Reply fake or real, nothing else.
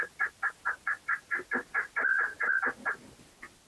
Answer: real